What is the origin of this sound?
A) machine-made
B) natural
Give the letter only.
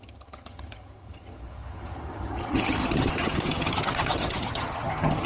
A